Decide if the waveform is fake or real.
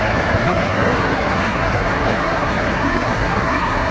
fake